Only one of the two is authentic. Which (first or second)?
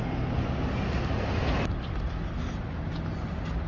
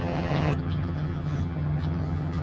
first